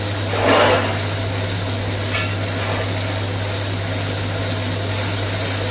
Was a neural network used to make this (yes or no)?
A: no